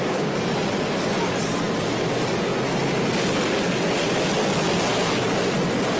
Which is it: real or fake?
real